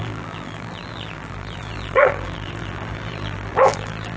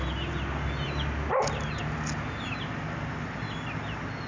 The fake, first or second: first